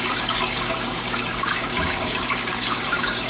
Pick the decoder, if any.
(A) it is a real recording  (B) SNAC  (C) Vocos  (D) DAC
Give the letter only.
D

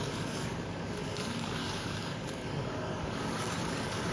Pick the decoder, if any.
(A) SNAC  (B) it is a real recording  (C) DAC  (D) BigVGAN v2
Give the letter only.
C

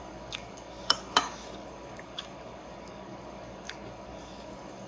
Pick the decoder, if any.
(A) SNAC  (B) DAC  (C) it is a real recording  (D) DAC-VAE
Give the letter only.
B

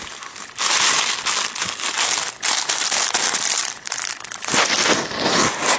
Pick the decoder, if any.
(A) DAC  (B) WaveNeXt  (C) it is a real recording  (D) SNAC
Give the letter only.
C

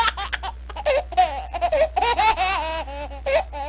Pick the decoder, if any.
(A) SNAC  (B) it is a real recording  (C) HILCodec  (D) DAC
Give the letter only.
B